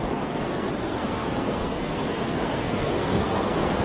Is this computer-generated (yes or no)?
yes